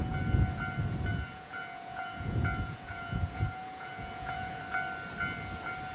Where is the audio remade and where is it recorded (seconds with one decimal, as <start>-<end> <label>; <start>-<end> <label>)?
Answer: 0.0-1.1 recorded; 1.1-4.6 remade; 4.6-5.9 recorded